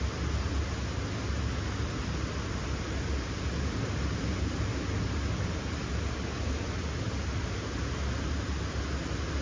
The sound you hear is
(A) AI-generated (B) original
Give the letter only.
B